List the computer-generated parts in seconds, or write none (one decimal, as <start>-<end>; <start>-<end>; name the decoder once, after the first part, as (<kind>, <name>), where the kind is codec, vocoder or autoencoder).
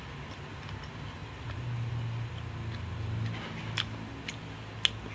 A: none